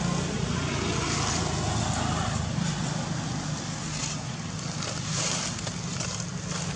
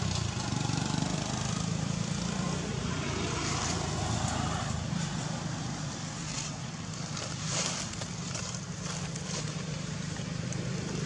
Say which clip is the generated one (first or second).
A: second